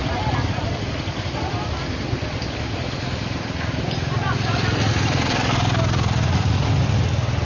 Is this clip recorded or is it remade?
recorded